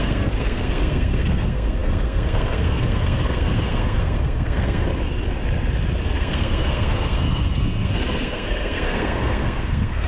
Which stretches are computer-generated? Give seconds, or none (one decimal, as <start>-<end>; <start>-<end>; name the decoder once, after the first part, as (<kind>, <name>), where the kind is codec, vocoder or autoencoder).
0.0-4.9 (codec, SNAC); 6.0-10.1